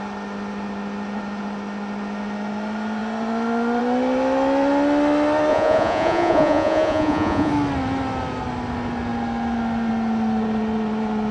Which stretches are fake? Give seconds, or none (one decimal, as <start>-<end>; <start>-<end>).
5.5-7.5